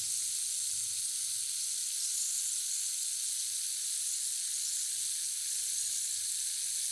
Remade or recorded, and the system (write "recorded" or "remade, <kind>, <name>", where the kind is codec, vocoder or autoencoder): recorded